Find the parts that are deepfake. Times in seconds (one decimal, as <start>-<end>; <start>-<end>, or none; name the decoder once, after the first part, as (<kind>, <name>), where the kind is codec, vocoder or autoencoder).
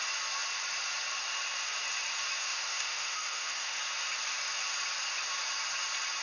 2.4-3.8 (autoencoder, DAC-VAE)